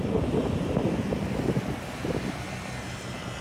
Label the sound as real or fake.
real